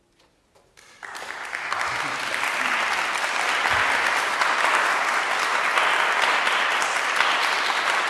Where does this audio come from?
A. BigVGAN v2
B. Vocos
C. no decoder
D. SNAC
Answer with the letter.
C